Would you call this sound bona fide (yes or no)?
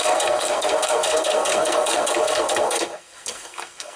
no